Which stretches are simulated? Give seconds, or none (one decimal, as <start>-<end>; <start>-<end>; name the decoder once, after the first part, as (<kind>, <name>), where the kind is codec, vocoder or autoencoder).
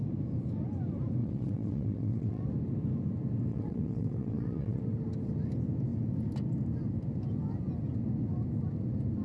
1.2-2.4 (vocoder, WaveNeXt); 3.5-4.8